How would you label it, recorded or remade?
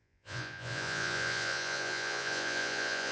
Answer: remade